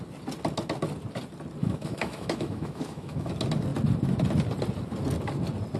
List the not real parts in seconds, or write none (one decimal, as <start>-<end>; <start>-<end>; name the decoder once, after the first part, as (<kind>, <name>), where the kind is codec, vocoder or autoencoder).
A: 1.6-3.3 (autoencoder, DAC-VAE)